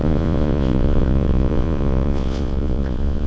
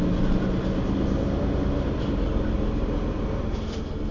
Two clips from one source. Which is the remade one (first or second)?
first